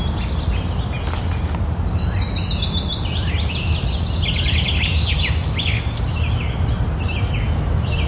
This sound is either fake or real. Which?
real